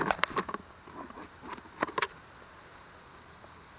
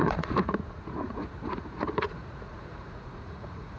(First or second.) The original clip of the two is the first